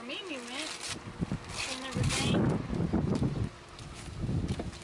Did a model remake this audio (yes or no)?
no